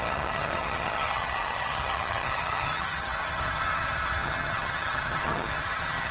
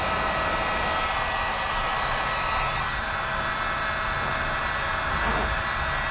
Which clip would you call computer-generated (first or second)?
first